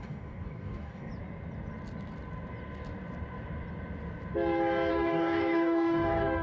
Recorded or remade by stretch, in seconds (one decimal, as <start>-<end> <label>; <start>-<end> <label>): 0.0-1.1 remade; 1.1-4.9 recorded; 4.9-6.4 remade